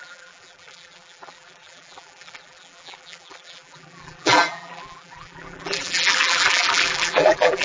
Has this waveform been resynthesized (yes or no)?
yes